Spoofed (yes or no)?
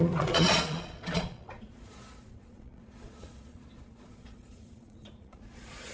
yes